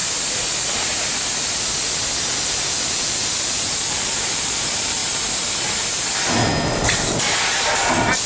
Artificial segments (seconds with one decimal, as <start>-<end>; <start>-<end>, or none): 2.2-5.0; 6.8-8.3